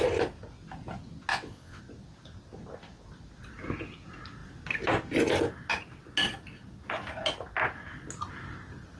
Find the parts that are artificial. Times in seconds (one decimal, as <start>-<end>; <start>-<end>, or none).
1.3-1.8